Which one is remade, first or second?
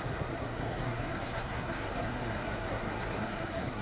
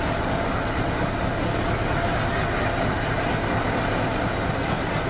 first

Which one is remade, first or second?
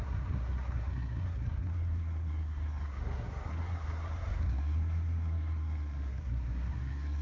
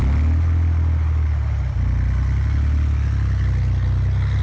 first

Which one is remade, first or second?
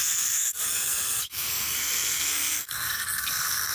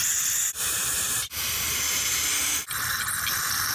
first